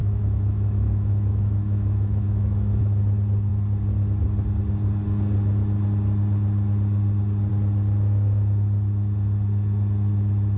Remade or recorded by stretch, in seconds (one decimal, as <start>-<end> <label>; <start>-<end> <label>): 0.0-2.8 remade; 2.8-10.6 recorded